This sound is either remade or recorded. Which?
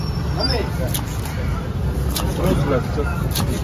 recorded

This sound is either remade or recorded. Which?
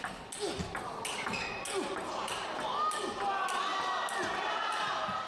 recorded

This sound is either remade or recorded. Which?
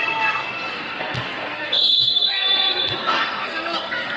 remade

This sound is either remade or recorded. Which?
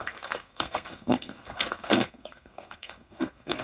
remade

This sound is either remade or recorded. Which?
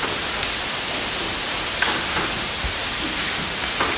recorded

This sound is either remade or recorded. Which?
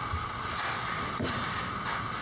recorded